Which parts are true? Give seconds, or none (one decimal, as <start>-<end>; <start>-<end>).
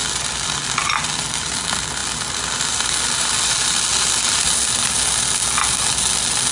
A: 0.0-6.5